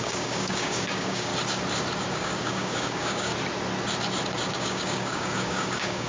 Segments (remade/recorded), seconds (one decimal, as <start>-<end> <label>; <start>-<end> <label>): 0.0-1.3 remade; 1.3-2.1 recorded; 2.1-3.3 remade; 3.3-4.5 recorded; 4.5-6.1 remade